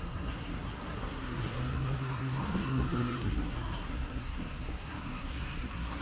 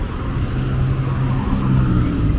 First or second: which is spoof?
first